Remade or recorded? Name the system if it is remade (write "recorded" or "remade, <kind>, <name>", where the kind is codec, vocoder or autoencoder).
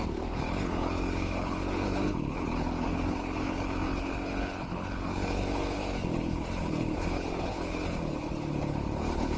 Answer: remade, codec, HILCodec